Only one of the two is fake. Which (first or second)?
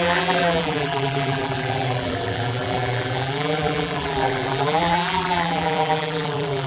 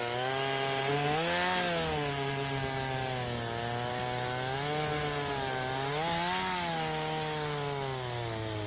first